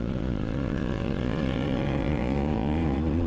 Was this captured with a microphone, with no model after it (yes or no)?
no